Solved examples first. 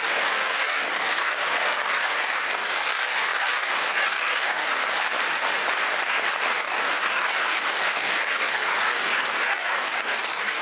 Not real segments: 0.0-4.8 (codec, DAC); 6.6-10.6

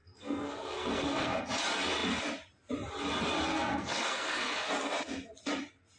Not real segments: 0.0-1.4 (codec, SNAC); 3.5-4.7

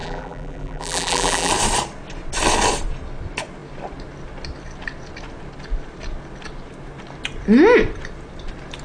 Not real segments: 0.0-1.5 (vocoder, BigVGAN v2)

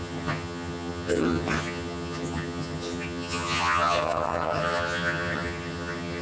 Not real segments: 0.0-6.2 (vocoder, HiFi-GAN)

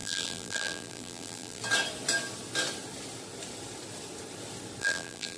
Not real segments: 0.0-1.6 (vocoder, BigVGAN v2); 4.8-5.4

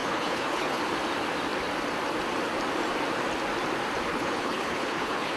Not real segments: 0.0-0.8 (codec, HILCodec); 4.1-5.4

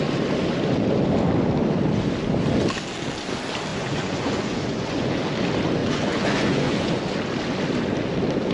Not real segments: 3.7-5.2 (vocoder, Vocos); 5.8-7.0

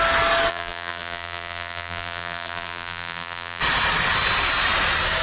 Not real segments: 0.5-3.6 (vocoder, BigVGAN v2)